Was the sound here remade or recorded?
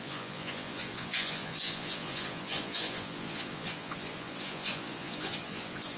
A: remade